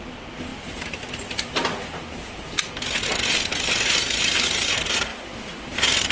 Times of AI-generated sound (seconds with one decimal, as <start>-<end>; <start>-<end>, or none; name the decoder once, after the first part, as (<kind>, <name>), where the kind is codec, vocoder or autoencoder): 0.5-2.0 (vocoder, BigVGAN v2)